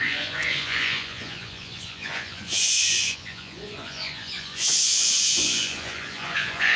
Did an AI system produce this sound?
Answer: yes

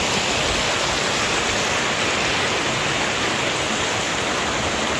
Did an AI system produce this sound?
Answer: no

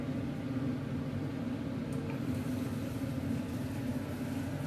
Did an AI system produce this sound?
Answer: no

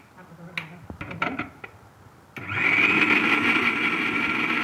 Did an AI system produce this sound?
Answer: no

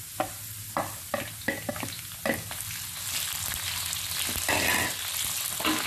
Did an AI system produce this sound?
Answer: no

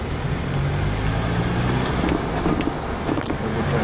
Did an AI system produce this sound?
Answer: no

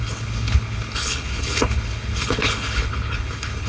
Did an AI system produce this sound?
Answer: yes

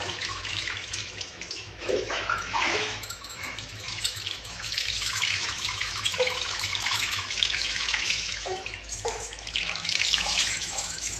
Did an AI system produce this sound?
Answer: yes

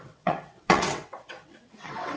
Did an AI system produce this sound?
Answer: yes